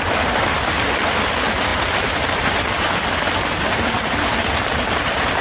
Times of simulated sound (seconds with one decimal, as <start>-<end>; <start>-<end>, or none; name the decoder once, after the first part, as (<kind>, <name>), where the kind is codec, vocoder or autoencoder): none